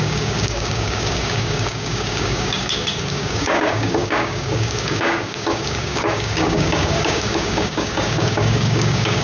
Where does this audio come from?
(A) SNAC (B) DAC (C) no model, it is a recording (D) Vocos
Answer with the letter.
B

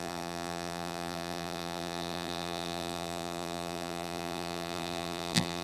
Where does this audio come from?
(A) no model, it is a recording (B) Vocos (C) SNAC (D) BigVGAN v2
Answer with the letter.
D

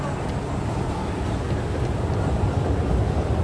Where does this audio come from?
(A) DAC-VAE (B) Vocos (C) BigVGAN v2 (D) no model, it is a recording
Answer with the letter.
D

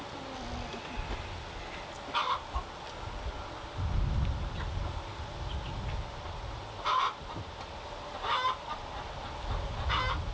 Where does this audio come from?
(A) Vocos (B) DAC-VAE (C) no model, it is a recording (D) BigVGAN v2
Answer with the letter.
C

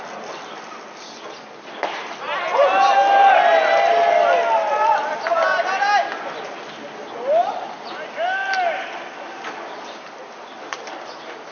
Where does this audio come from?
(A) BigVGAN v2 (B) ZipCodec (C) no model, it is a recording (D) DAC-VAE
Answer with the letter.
C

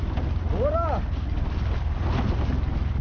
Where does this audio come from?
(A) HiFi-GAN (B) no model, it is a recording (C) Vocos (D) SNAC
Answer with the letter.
B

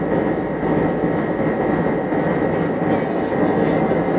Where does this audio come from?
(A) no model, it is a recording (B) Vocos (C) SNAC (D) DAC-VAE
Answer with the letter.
A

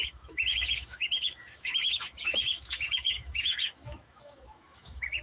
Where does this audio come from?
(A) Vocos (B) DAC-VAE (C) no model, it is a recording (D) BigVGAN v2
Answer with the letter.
B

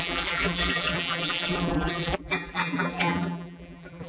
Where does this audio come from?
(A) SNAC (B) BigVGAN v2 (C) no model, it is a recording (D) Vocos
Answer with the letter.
B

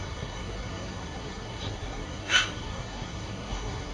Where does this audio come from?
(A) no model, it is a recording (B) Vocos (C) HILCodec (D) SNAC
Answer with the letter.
D